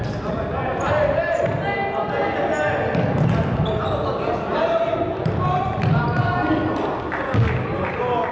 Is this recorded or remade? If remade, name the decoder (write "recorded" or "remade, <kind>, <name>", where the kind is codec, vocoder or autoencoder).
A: recorded